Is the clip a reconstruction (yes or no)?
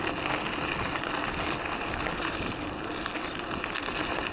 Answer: no